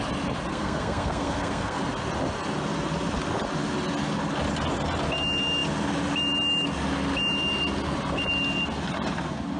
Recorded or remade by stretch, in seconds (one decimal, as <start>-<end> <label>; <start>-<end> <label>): 0.0-0.5 recorded; 0.5-1.8 remade; 1.8-9.6 recorded